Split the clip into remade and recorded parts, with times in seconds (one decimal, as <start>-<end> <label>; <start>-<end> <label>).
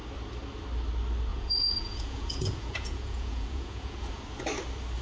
0.0-1.3 recorded; 1.3-4.2 remade; 4.2-5.0 recorded